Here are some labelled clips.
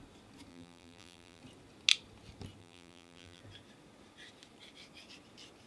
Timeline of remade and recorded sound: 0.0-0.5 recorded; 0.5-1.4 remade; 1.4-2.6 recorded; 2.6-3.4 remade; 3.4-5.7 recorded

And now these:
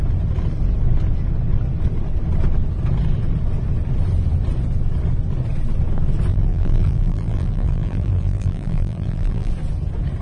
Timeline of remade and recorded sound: 0.0-6.3 recorded; 6.3-9.5 remade; 9.5-10.2 recorded

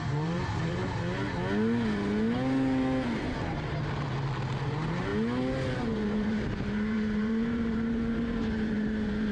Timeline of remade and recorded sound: 0.0-0.8 remade; 0.8-4.6 recorded; 4.6-5.1 remade; 5.1-5.8 recorded; 5.8-9.3 remade

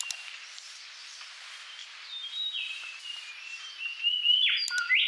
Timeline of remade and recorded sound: 0.0-1.8 recorded; 1.8-3.6 remade; 3.6-5.1 recorded

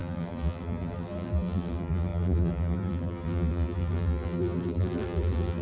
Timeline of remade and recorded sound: 0.0-5.6 remade

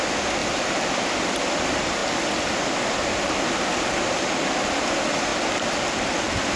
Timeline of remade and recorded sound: 0.0-0.4 recorded; 0.4-1.4 remade; 1.4-2.0 recorded; 2.0-4.0 remade; 4.0-5.3 recorded; 5.3-6.6 remade